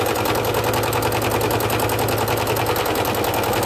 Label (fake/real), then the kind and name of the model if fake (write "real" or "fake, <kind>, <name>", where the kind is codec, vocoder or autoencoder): real